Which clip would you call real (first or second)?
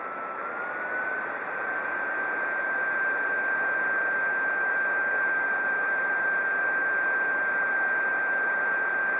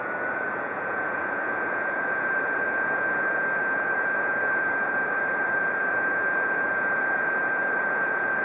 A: first